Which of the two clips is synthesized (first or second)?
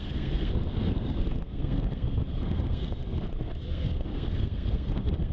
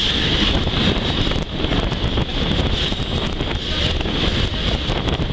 first